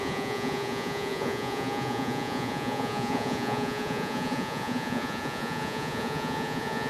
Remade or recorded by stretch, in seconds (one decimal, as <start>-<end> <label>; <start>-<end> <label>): 0.0-6.9 remade